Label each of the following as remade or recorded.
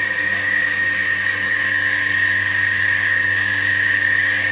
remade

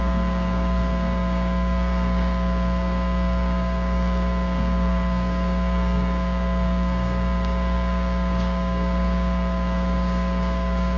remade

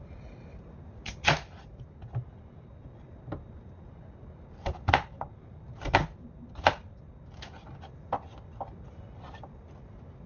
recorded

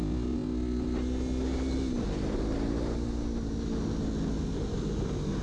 recorded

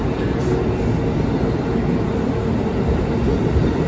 recorded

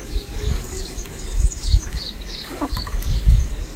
remade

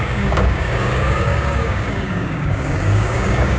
remade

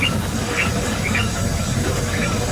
remade